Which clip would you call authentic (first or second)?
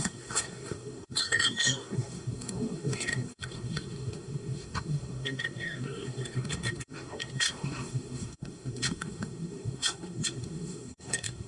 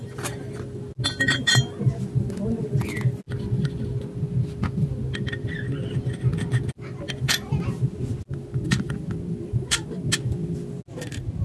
second